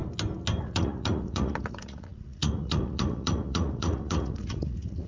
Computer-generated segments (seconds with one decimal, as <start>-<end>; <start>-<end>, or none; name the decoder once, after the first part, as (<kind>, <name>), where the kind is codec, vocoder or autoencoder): 0.6-5.1 (vocoder, Vocos)